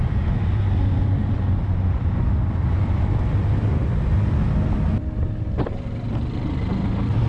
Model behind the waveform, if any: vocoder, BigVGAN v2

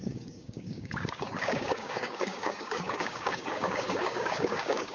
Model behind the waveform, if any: codec, DAC